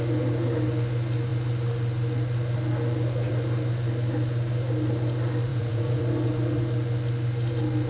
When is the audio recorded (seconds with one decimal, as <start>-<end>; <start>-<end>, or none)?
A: 0.0-5.5; 6.0-7.9